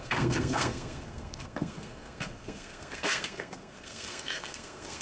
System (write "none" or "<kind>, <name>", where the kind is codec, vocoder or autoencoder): codec, SNAC